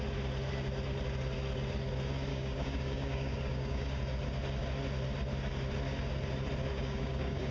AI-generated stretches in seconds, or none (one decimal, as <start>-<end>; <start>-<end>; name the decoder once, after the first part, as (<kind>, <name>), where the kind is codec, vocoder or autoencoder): 2.3-4.0 (codec, DAC); 6.7-7.5